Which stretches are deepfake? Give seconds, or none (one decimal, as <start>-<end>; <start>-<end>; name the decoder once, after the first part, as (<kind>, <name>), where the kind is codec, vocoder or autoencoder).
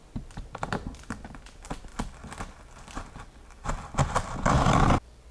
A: none